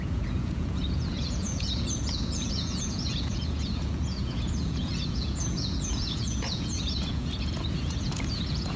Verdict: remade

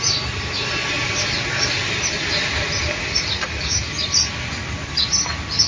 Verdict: recorded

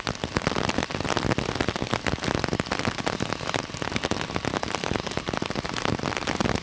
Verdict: recorded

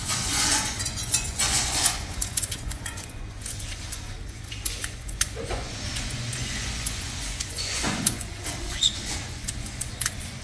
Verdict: remade